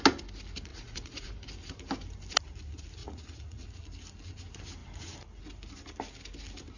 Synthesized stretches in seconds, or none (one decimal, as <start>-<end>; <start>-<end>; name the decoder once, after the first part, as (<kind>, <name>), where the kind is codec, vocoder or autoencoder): 0.7-1.3 (vocoder, Vocos); 3.0-3.8